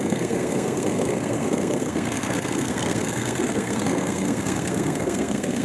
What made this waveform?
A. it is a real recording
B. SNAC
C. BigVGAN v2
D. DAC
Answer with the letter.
B